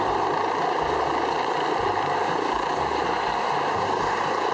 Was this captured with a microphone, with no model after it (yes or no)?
yes